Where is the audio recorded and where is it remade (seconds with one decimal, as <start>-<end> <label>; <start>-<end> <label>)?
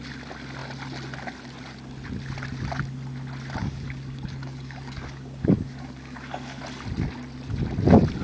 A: 0.0-3.6 recorded; 3.6-6.6 remade; 6.6-8.2 recorded